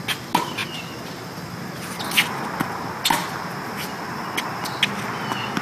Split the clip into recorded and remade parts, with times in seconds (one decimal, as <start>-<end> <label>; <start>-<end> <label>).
0.0-5.6 recorded

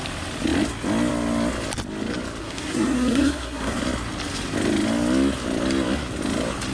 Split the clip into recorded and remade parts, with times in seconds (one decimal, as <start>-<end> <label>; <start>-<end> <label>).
0.0-2.4 recorded; 2.4-3.8 remade; 3.8-6.7 recorded

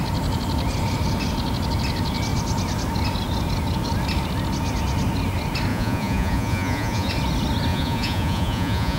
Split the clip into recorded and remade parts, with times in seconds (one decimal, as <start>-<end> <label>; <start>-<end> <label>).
0.0-5.7 recorded; 5.7-7.1 remade; 7.1-7.7 recorded; 7.7-9.0 remade

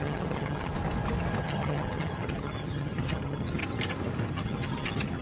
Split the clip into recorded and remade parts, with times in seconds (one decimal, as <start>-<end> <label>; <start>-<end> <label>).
0.0-0.7 remade; 0.7-1.4 recorded; 1.4-3.6 remade; 3.6-4.3 recorded; 4.3-5.2 remade